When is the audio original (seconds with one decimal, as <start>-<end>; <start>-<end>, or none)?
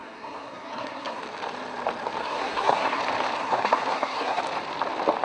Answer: 1.2-2.2; 3.0-3.4; 4.4-5.2